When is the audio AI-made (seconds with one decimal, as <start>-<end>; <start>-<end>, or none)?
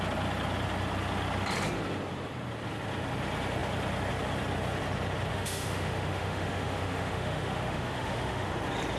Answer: 5.3-8.5